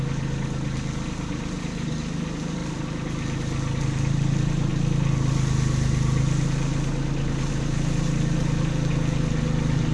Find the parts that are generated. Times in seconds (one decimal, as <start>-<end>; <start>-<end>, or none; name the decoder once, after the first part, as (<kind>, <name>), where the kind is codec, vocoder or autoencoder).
none